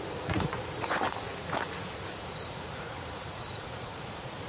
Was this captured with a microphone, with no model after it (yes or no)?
no